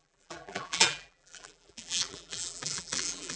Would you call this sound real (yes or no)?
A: no